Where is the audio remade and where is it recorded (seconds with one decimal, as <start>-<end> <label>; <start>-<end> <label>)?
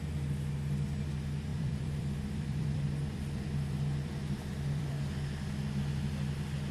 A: 0.0-1.5 recorded; 1.5-4.9 remade; 4.9-6.7 recorded